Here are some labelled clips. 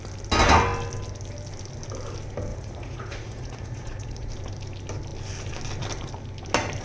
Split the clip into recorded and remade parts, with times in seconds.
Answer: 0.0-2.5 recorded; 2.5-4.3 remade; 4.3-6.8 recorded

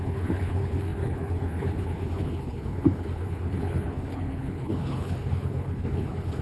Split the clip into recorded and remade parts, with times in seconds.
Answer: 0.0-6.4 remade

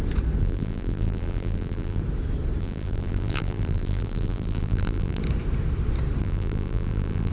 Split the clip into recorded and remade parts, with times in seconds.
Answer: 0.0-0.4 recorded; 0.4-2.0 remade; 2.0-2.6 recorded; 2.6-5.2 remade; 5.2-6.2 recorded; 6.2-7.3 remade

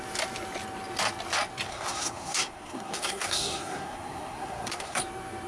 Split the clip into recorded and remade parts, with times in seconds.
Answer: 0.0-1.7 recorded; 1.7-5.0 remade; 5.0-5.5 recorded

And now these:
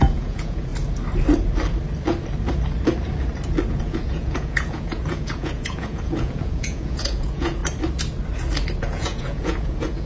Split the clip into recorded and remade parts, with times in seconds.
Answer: 0.0-0.7 remade; 0.7-3.7 recorded; 3.7-7.6 remade; 7.6-8.8 recorded; 8.8-10.1 remade